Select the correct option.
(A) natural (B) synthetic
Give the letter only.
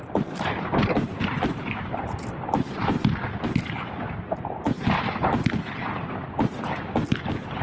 A